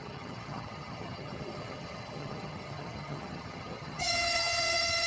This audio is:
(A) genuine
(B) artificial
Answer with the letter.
B